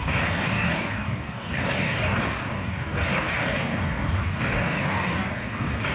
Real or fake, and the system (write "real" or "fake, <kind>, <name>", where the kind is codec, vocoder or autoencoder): fake, codec, DAC